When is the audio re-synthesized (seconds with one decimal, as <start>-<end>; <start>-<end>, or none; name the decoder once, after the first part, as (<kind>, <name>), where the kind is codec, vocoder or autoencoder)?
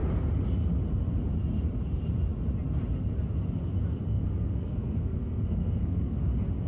4.1-6.3 (codec, SNAC)